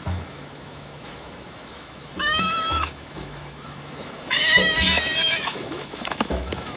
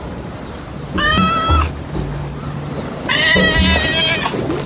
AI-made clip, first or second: first